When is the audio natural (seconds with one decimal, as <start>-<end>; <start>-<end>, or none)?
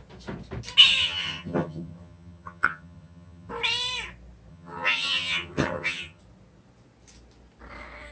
0.0-1.0; 3.5-4.5; 6.2-8.1